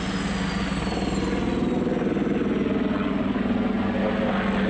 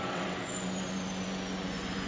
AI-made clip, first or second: second